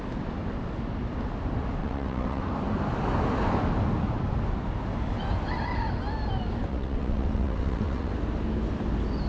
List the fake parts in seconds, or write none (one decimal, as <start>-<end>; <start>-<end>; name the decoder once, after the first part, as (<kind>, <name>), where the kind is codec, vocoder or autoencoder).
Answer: 1.8-2.4 (vocoder, WaveNeXt); 6.7-8.1